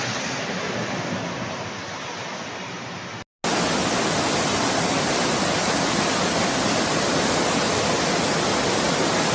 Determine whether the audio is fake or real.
real